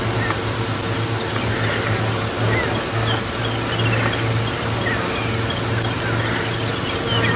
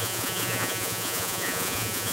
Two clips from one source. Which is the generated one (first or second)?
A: second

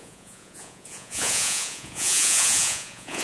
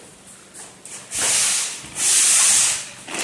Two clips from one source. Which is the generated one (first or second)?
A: first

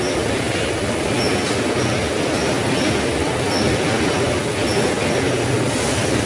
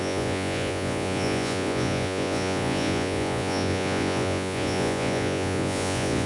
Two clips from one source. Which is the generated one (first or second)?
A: second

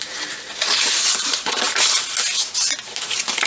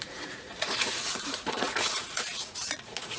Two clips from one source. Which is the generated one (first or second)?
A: second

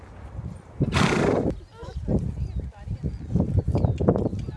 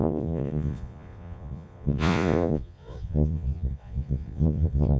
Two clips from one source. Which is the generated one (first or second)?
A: second